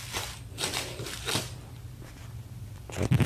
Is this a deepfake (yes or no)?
no